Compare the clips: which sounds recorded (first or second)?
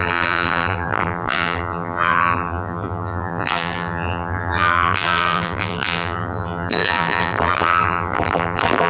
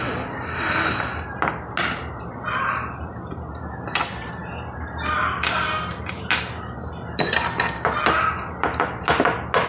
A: second